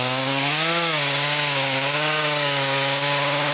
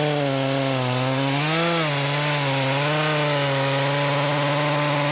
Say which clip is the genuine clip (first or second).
second